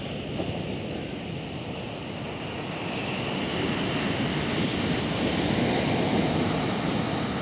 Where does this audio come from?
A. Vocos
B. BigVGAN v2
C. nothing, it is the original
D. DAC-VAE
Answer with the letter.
C